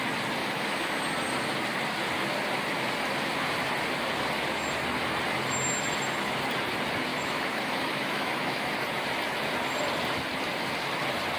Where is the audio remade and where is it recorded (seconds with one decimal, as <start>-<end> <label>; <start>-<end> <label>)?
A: 0.0-0.4 recorded; 0.4-1.0 remade; 1.0-7.1 recorded; 7.1-8.7 remade; 8.7-11.4 recorded